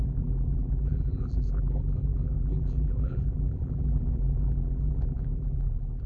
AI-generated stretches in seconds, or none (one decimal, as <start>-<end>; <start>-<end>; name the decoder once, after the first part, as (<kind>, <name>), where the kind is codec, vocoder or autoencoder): 0.0-6.1 (vocoder, BigVGAN v2)